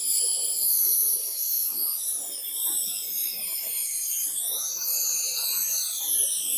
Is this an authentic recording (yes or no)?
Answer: no